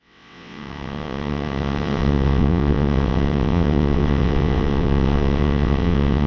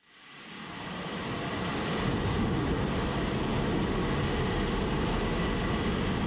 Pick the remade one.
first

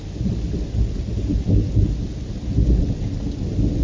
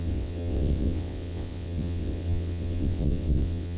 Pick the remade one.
second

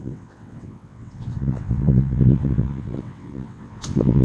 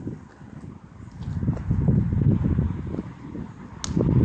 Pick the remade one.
first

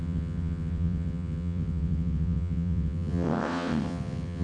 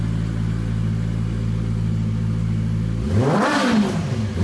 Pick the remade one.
first